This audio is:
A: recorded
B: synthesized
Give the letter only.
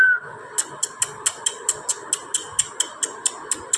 A